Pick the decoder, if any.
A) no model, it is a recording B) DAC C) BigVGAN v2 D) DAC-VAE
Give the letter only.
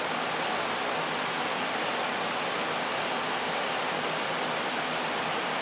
A